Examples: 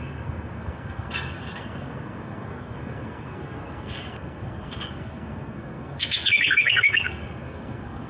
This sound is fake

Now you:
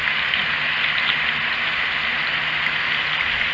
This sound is real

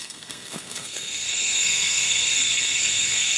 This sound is fake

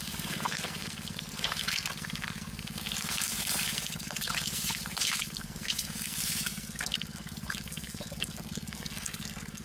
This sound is fake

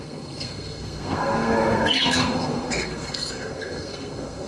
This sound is fake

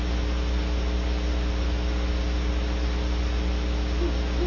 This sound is real